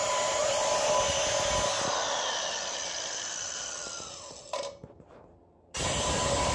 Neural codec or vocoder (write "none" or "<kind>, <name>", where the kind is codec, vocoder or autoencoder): none